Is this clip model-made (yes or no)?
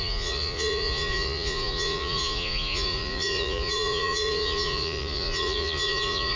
yes